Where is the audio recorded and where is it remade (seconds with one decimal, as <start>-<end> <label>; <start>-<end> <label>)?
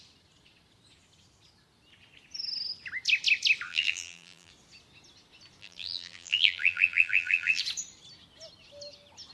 0.0-3.7 recorded; 3.7-4.5 remade; 4.5-5.6 recorded; 5.6-7.6 remade; 7.6-9.3 recorded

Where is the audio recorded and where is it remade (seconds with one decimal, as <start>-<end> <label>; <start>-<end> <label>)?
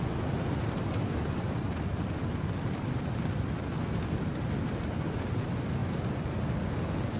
0.0-7.2 recorded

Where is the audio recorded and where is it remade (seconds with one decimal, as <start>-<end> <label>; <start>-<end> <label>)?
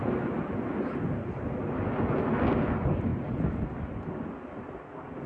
0.0-5.3 recorded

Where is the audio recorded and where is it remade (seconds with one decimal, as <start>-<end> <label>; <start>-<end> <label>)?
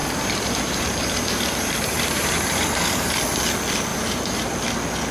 0.0-3.1 remade; 3.1-3.9 recorded; 3.9-4.4 remade; 4.4-5.1 recorded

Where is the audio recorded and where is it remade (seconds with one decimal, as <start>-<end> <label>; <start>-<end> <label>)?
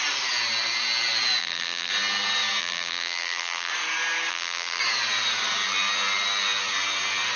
0.0-1.4 recorded; 1.4-1.9 remade; 1.9-2.6 recorded; 2.6-3.7 remade; 3.7-4.3 recorded; 4.3-4.8 remade; 4.8-7.4 recorded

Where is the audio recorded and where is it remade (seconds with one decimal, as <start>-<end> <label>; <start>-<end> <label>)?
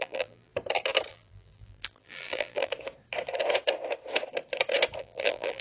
0.0-0.5 remade; 0.5-1.1 recorded; 1.1-2.7 remade; 2.7-5.0 recorded; 5.0-5.6 remade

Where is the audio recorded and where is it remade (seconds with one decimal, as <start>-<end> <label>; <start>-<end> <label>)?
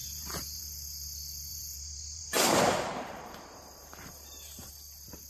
0.0-0.6 remade; 0.6-1.5 recorded; 1.5-4.7 remade; 4.7-5.3 recorded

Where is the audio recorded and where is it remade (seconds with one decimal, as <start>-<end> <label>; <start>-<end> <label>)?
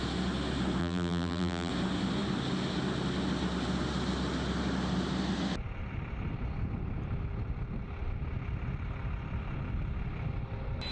0.0-0.8 recorded; 0.8-1.7 remade; 1.7-10.9 recorded